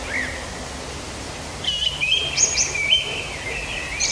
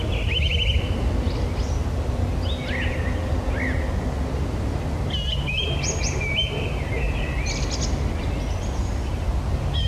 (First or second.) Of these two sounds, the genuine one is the second